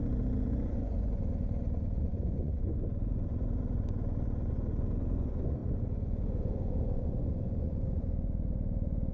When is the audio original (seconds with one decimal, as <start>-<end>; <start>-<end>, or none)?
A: none

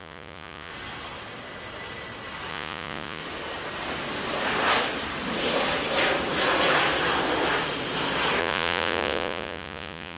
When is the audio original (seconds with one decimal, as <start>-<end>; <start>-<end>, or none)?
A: 0.7-2.5; 3.2-8.4

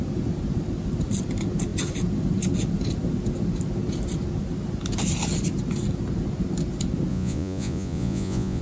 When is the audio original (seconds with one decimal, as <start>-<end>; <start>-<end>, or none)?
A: 0.0-7.1

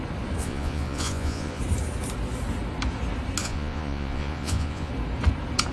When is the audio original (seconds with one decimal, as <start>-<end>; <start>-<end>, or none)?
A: 0.0-0.4; 1.6-3.4; 4.9-5.7

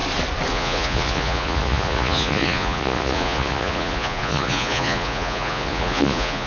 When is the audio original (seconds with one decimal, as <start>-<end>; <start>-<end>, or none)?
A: 0.0-0.5